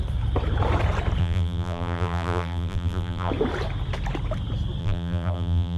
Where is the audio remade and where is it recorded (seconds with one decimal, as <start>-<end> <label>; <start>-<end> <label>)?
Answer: 0.0-1.2 recorded; 1.2-3.3 remade; 3.3-4.8 recorded; 4.8-5.8 remade